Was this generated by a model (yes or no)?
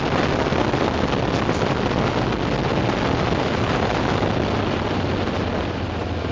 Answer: no